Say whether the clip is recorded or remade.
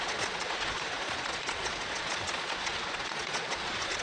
remade